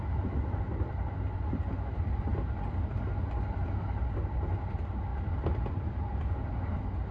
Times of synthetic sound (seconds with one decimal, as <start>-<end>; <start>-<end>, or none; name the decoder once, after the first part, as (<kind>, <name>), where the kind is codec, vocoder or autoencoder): none